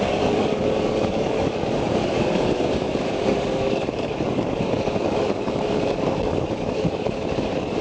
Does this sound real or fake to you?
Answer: fake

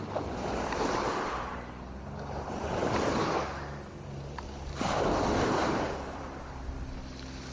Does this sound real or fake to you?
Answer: fake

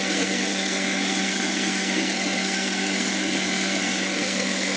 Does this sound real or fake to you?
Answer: fake